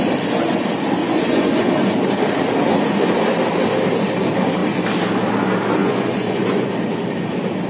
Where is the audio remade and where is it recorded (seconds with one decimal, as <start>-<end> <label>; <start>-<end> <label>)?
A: 0.0-1.0 recorded; 1.0-1.7 remade; 1.7-5.8 recorded; 5.8-6.7 remade; 6.7-7.7 recorded